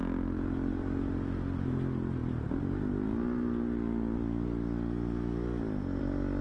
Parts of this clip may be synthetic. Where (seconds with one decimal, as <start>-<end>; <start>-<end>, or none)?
none